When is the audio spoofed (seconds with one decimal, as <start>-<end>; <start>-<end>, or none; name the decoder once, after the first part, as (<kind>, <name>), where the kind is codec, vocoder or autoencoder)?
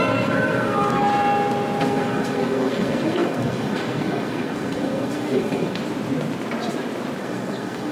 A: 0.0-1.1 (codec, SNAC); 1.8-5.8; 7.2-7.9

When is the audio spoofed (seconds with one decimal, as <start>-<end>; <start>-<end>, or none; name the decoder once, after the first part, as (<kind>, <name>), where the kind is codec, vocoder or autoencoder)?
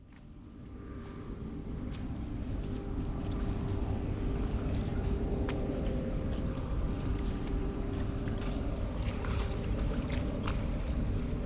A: 4.9-9.8 (vocoder, BigVGAN v2)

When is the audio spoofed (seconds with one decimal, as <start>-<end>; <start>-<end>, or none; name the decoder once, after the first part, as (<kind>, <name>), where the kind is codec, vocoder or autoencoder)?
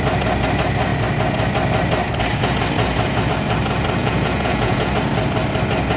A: 4.0-4.9 (vocoder, Vocos)